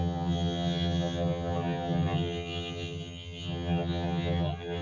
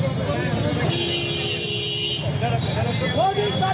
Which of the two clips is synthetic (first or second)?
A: first